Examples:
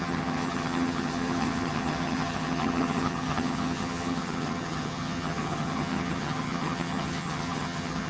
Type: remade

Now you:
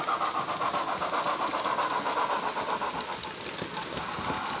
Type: recorded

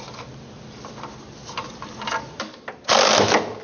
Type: recorded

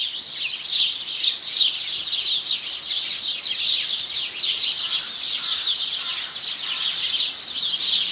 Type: recorded